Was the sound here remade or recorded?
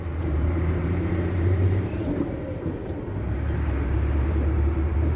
remade